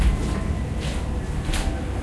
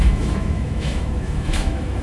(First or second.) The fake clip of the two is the second